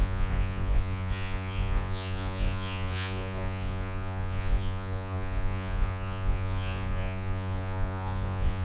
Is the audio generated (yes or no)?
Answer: yes